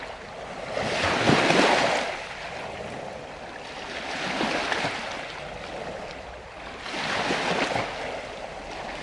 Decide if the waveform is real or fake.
real